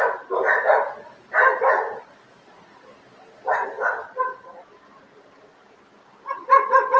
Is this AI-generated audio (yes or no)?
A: no